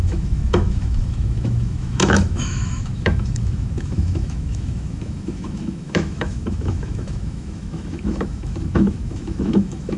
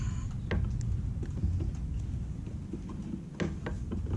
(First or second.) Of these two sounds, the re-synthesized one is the first